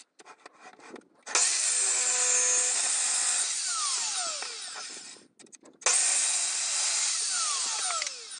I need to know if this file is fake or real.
real